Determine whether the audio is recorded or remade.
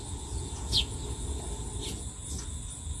remade